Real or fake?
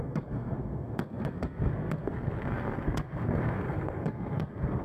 fake